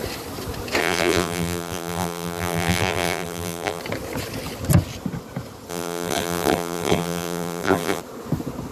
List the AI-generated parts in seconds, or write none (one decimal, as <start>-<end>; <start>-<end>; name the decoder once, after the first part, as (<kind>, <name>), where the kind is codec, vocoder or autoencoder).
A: 0.8-3.8 (vocoder, BigVGAN v2); 5.7-8.0